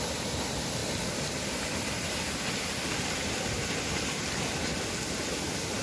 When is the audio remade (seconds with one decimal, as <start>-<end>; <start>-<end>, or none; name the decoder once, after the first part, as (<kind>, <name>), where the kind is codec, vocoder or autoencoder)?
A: 0.0-0.8 (vocoder, BigVGAN v2); 4.2-4.7; 5.3-5.8